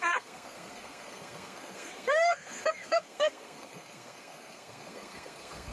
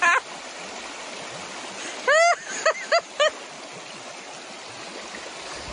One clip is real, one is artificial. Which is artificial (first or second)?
first